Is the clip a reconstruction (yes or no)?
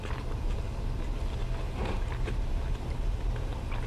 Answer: no